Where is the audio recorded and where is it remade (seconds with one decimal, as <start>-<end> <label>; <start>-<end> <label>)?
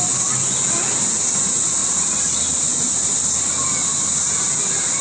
0.0-1.8 recorded; 1.8-3.3 remade; 3.3-5.0 recorded